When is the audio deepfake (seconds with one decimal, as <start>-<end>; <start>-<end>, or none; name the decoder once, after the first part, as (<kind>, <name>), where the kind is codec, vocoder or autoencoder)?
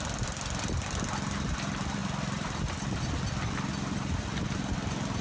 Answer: none